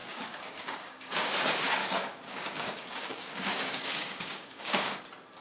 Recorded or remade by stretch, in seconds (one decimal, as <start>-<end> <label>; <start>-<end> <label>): 0.0-1.3 remade; 1.3-1.8 recorded; 1.8-5.0 remade; 5.0-5.4 recorded